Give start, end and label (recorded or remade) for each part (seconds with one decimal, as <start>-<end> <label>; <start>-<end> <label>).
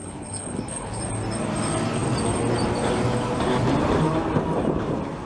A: 0.0-1.0 remade; 1.0-5.3 recorded